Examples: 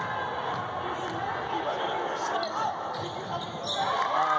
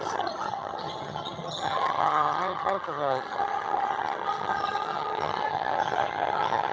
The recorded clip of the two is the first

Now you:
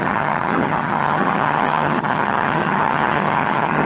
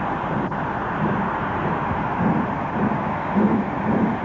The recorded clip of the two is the second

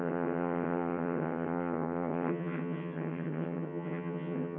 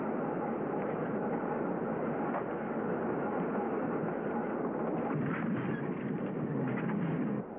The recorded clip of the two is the second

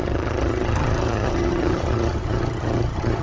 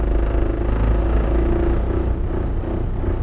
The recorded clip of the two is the second